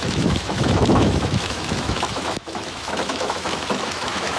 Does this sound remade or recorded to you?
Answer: remade